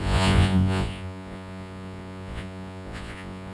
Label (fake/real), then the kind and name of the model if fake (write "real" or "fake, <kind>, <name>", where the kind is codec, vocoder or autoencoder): fake, vocoder, Vocos